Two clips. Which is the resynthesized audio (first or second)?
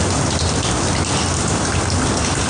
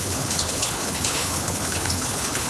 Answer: second